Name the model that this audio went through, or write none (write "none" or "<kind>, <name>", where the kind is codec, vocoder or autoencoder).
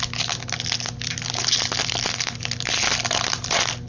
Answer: none